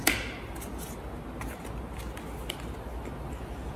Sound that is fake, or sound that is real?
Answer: real